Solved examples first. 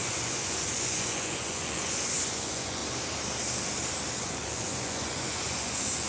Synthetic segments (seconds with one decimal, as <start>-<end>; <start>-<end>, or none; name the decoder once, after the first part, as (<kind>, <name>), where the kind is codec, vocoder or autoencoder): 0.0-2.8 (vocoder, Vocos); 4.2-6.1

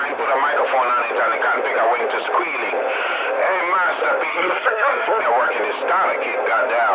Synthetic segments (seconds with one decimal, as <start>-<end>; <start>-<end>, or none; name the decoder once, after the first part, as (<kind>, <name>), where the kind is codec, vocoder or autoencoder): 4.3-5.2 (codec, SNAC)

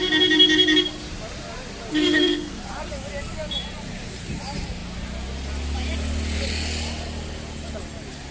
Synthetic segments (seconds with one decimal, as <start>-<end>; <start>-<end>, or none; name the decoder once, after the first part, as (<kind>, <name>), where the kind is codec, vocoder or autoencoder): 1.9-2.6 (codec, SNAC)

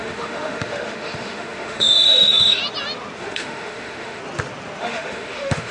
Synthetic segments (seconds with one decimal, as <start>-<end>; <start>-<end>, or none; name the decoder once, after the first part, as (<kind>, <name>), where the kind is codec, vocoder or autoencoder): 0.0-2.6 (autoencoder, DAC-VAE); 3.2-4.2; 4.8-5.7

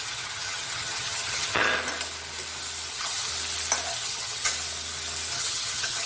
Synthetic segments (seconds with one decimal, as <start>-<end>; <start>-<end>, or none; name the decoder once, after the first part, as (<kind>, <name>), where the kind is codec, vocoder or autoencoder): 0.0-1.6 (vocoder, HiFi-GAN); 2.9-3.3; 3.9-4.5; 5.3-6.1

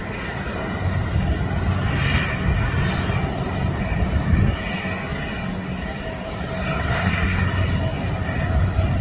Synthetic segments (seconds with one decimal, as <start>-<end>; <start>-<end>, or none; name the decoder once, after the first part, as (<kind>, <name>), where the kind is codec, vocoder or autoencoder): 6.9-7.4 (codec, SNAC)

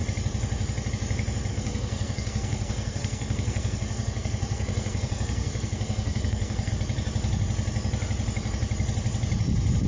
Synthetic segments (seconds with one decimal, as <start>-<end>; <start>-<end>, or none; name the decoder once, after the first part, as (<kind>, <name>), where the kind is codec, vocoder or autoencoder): 1.5-6.7 (codec, SNAC)

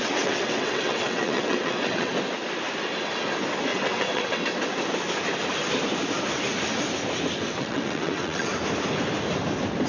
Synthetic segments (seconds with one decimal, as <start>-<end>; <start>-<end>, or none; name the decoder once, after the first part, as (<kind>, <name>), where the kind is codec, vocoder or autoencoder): 0.0-2.1 (vocoder, WaveNeXt); 3.7-4.4; 7.6-8.5